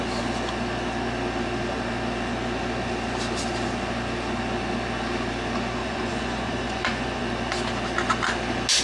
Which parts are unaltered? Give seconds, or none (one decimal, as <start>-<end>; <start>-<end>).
0.0-5.8; 7.2-8.8